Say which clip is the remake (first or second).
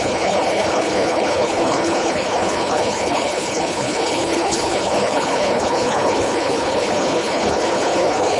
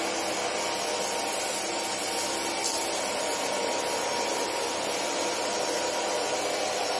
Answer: first